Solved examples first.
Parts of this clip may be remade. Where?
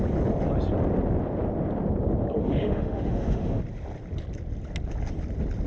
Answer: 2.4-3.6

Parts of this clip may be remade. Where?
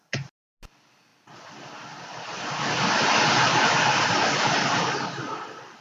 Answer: none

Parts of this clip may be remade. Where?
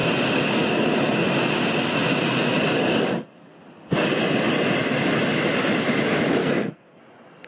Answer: 6.4-7.0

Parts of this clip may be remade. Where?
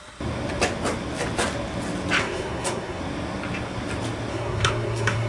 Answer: 2.2-3.0; 4.3-5.3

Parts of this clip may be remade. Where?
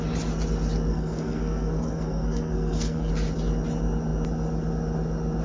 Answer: 0.9-3.1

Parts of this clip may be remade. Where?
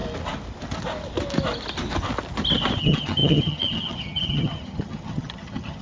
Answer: 2.8-5.8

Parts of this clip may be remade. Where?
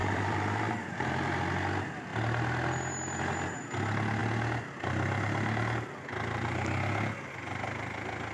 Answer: 0.0-1.4